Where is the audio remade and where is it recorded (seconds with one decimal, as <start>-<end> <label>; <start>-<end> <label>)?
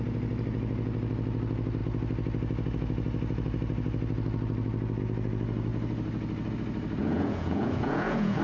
0.0-7.0 recorded; 7.0-8.4 remade